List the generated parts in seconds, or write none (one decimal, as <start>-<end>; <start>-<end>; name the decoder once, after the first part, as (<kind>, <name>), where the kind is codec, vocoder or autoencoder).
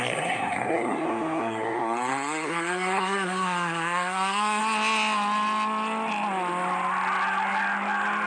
0.0-4.6 (codec, SNAC)